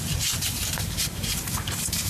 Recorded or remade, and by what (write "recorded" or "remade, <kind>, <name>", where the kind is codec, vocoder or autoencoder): remade, vocoder, BigVGAN v2